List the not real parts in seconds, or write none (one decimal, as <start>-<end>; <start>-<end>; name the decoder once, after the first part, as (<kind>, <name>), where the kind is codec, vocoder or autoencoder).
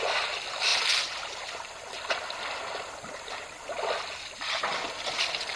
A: none